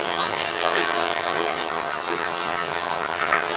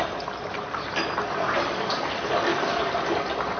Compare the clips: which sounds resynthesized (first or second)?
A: first